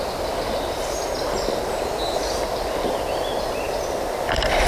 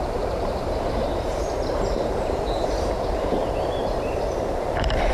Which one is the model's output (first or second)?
second